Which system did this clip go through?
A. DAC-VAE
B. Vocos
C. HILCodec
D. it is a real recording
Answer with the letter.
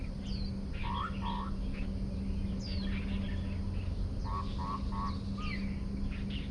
D